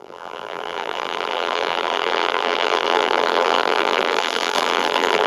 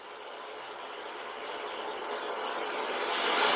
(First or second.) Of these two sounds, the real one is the second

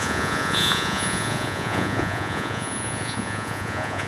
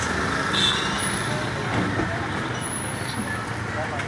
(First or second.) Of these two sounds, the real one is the second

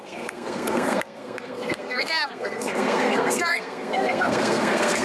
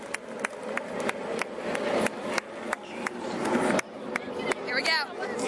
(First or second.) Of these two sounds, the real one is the second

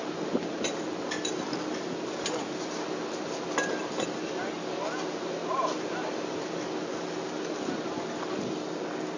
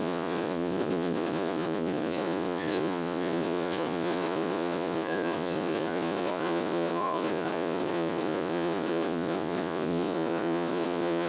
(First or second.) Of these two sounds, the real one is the first